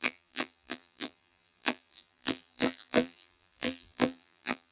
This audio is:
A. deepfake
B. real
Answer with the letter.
A